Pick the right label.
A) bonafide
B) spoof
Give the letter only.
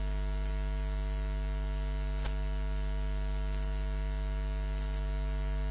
A